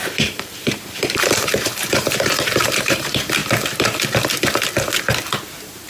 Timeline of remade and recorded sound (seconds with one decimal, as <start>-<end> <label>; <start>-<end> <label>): 0.0-3.4 remade; 3.4-5.5 recorded; 5.5-5.9 remade